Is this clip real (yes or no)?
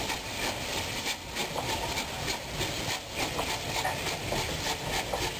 yes